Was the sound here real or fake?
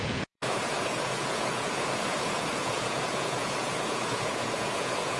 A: fake